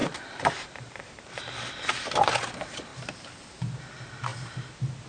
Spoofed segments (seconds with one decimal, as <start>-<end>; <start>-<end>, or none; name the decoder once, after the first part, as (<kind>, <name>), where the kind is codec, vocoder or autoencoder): 0.0-1.4 (vocoder, BigVGAN v2)